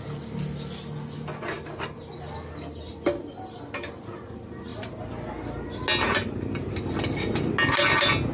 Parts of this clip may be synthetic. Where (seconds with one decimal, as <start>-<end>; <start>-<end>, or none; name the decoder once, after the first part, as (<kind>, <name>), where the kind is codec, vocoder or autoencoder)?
none